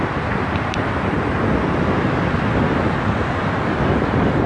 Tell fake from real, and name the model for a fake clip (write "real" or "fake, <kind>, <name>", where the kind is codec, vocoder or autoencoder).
real